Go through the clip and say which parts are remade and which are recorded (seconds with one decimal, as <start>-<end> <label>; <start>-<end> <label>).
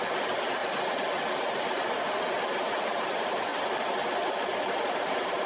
0.0-0.6 remade; 0.6-2.8 recorded; 2.8-3.5 remade; 3.5-4.3 recorded; 4.3-5.5 remade